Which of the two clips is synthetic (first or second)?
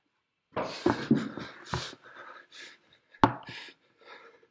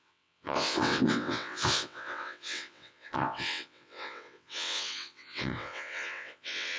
second